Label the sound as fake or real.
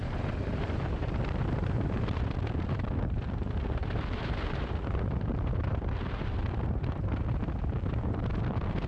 fake